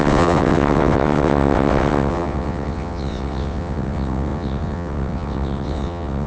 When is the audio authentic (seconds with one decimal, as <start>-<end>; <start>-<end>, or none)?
none

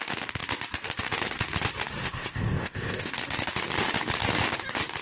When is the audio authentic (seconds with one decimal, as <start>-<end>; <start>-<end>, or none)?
0.0-2.0; 3.1-5.0

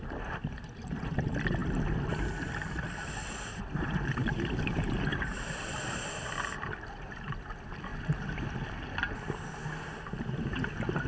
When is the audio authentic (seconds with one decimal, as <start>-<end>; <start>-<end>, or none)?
1.6-2.1; 7.9-11.1

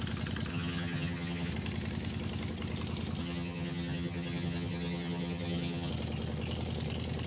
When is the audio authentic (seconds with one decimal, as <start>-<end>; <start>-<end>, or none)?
0.0-0.5; 1.5-3.2; 5.9-7.3

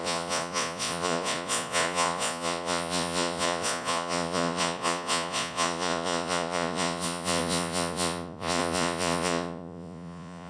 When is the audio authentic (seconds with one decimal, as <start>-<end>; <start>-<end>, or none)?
none

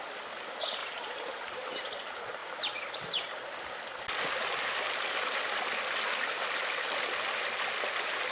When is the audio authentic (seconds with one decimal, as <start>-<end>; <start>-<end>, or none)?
0.0-0.8; 1.8-8.3